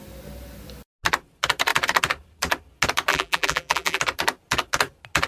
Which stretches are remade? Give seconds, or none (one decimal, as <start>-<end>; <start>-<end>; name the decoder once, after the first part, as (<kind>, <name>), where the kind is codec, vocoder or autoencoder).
3.1-4.0 (vocoder, BigVGAN v2)